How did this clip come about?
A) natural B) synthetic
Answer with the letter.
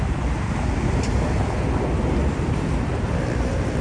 A